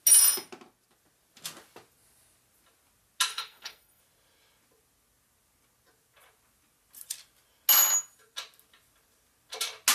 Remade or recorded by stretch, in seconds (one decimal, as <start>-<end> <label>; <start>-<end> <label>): 0.0-3.3 recorded; 3.3-4.0 remade; 4.0-9.9 recorded